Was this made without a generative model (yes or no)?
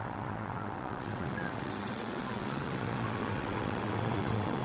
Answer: no